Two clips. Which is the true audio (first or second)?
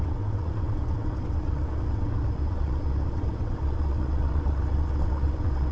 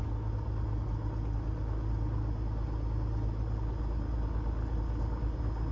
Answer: second